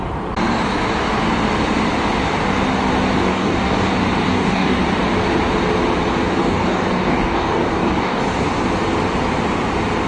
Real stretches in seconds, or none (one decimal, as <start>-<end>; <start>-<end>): 0.0-3.3; 3.9-4.3; 4.8-6.4; 8.2-10.1